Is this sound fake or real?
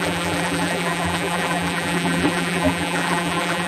fake